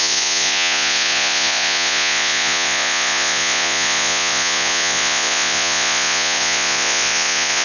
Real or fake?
fake